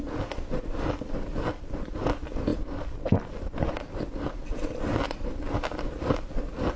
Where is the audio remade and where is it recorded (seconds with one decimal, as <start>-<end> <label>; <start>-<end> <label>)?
0.0-6.8 recorded